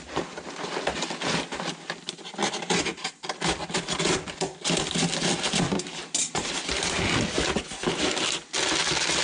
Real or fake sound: real